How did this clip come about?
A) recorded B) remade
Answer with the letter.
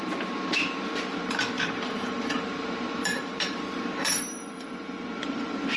B